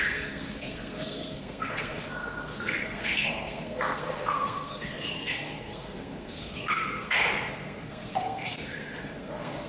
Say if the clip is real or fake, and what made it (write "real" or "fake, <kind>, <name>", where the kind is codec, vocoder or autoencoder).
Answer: fake, codec, SNAC